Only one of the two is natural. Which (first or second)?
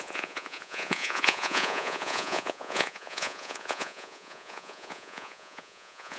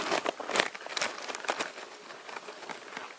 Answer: second